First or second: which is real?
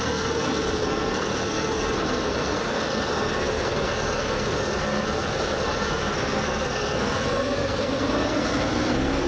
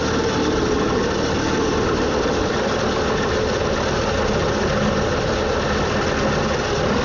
second